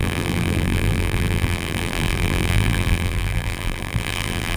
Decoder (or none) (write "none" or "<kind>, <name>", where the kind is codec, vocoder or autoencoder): vocoder, BigVGAN v2